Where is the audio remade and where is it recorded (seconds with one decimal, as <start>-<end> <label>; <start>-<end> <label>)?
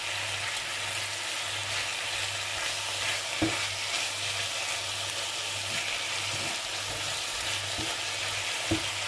0.0-9.1 recorded